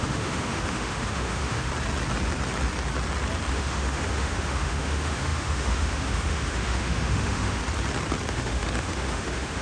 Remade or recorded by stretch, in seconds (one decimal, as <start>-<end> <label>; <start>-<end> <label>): 0.0-1.7 remade; 1.7-3.5 recorded; 3.5-7.6 remade; 7.6-8.3 recorded; 8.3-9.6 remade